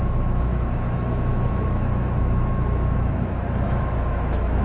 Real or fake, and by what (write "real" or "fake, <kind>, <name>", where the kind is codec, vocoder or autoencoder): fake, autoencoder, DAC-VAE